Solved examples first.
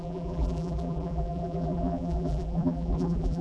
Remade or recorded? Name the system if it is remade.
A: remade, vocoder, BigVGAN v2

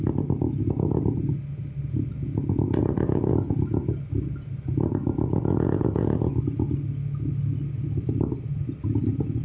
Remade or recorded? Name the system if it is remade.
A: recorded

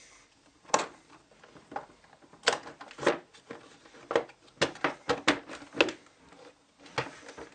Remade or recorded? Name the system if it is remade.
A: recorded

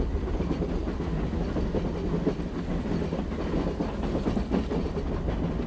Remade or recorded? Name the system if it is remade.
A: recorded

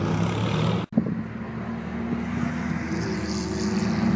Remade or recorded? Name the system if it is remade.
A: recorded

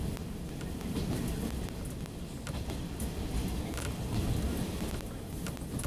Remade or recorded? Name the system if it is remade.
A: recorded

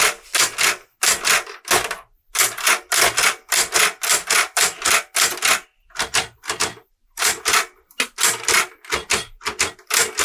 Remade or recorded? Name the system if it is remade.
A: recorded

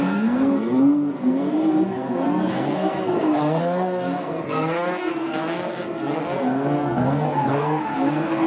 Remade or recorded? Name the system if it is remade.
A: remade, codec, SNAC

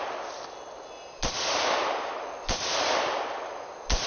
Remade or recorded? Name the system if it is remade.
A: recorded